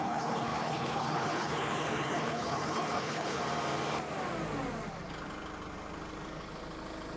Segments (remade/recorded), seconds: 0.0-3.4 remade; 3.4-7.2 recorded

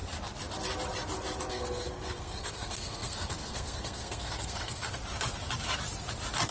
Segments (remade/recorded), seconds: 0.0-1.5 recorded; 1.5-5.0 remade; 5.0-6.5 recorded

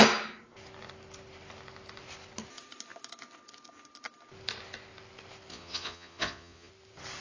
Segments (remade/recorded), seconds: 0.0-5.5 recorded; 5.5-6.7 remade; 6.7-7.2 recorded

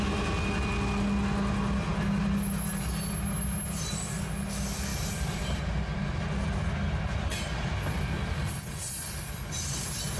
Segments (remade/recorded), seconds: 0.0-4.9 recorded; 4.9-5.6 remade; 5.6-10.2 recorded

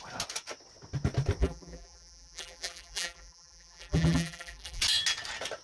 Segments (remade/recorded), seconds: 0.0-1.4 recorded; 1.4-4.8 remade; 4.8-5.6 recorded